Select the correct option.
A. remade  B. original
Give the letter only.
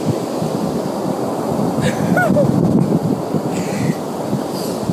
B